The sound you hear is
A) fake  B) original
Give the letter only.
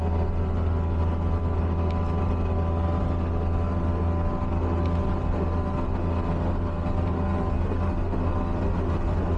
B